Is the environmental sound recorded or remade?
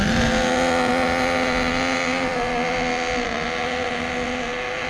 recorded